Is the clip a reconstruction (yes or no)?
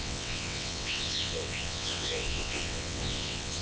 yes